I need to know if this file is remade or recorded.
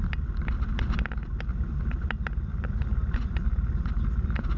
recorded